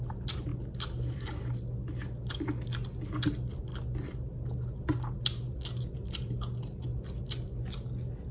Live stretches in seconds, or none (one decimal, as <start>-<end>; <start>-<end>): 0.0-8.3